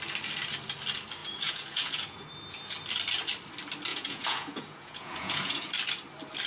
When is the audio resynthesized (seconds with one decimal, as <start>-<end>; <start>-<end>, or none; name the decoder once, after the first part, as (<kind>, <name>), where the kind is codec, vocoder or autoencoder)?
1.2-2.3 (vocoder, Vocos); 3.9-5.7